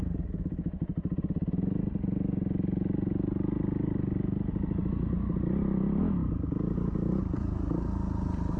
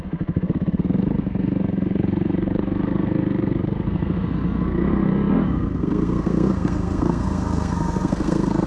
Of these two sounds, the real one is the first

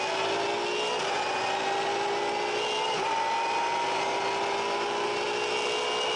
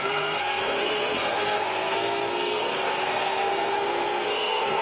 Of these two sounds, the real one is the first